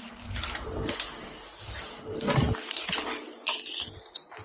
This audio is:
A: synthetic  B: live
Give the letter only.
A